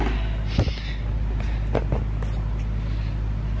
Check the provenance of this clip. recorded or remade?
recorded